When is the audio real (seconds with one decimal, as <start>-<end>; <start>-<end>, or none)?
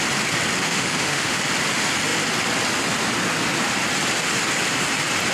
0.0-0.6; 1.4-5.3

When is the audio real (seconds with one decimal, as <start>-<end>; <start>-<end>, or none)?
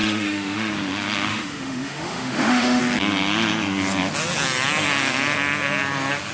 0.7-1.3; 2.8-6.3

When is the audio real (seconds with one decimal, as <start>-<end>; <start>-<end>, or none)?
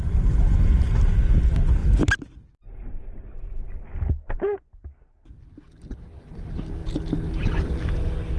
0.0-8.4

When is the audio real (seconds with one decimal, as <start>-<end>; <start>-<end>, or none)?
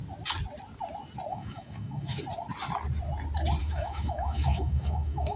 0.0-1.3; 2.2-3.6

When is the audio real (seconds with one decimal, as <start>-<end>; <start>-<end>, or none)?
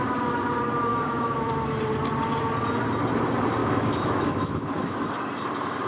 0.0-0.9; 1.5-3.6; 5.0-5.9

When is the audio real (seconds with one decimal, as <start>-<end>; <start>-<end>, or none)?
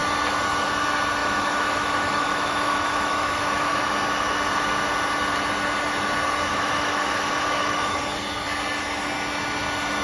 0.0-1.2; 3.9-6.5; 8.0-10.0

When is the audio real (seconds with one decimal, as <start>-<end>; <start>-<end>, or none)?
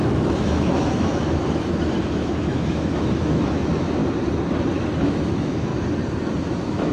1.4-2.0; 4.0-5.0; 5.7-6.5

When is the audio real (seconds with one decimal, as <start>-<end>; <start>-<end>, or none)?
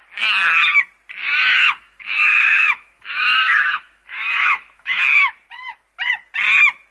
0.0-1.2; 5.3-6.9